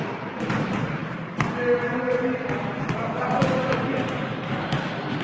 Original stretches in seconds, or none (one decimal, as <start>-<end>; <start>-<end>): 0.0-5.2